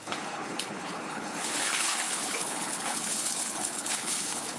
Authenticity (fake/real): fake